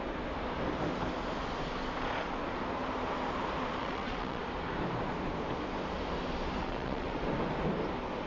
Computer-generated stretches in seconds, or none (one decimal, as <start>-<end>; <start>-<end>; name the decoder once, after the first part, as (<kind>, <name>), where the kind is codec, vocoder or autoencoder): 3.8-4.4 (vocoder, WaveNeXt); 6.6-7.2